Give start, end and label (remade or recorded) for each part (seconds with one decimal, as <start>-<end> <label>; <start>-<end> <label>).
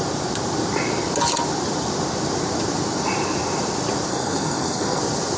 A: 0.0-4.1 recorded; 4.1-5.0 remade; 5.0-5.4 recorded